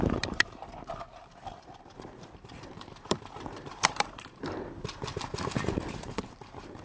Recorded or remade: remade